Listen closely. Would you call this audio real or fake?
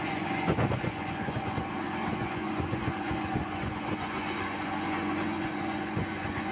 fake